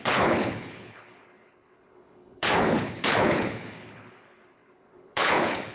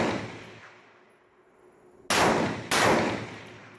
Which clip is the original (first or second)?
second